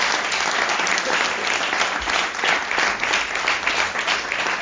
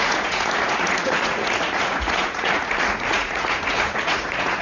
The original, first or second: first